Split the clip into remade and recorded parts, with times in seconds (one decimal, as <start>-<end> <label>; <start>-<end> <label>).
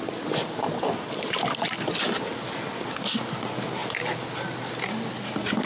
0.0-5.7 recorded